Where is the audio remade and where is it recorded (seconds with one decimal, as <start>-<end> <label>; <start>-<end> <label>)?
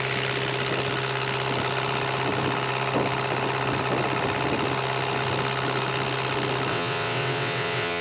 0.0-6.7 recorded; 6.7-8.0 remade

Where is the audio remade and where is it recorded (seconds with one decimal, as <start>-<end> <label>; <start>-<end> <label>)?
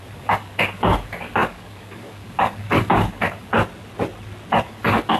0.0-3.5 remade; 3.5-4.6 recorded; 4.6-5.2 remade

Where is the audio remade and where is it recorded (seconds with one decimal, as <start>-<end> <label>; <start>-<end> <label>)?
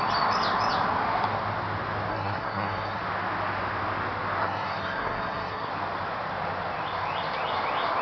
0.0-2.1 recorded; 2.1-3.0 remade; 3.0-4.4 recorded; 4.4-5.7 remade; 5.7-8.0 recorded